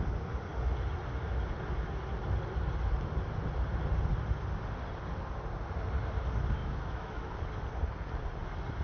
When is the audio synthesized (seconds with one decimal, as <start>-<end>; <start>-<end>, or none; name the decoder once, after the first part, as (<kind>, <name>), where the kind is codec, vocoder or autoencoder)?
6.6-7.3 (autoencoder, DAC-VAE)

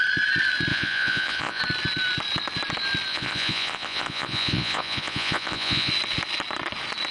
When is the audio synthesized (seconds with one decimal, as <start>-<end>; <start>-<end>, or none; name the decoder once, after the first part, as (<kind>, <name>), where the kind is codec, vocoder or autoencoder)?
0.7-1.6 (vocoder, Vocos); 3.1-5.9

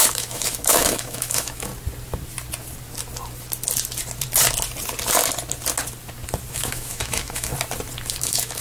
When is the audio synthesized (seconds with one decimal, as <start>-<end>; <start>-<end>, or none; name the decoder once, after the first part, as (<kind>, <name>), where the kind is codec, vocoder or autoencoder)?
0.0-1.7 (autoencoder, DAC-VAE); 6.5-7.5; 8.2-8.6